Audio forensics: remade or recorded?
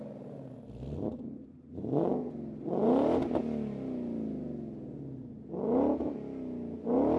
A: recorded